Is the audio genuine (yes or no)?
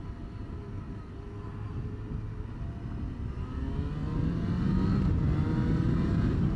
yes